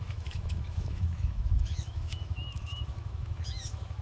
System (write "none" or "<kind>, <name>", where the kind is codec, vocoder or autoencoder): autoencoder, DAC-VAE